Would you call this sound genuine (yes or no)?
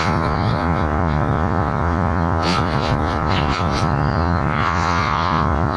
no